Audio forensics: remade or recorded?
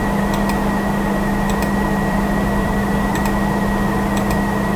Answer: remade